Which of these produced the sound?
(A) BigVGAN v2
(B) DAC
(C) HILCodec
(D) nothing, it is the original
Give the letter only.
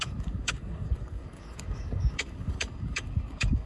B